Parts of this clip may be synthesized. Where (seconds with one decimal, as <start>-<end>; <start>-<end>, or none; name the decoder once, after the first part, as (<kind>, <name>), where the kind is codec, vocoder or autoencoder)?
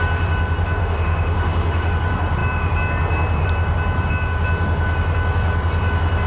0.8-1.9 (autoencoder, DAC-VAE)